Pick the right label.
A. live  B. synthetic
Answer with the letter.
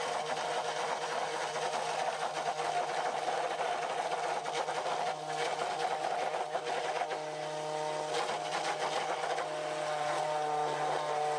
A